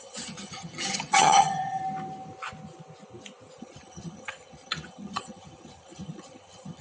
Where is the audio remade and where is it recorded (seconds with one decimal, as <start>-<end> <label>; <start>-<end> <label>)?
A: 0.0-1.8 remade; 1.8-3.6 recorded; 3.6-6.8 remade